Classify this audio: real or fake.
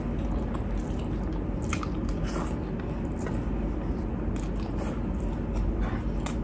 real